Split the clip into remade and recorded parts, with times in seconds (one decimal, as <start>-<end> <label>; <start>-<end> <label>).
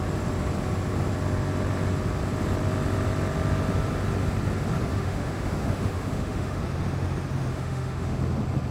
0.0-4.9 recorded; 4.9-6.6 remade; 6.6-7.5 recorded; 7.5-8.2 remade; 8.2-8.7 recorded